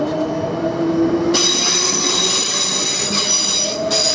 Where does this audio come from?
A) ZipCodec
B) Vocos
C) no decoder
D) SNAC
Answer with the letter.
C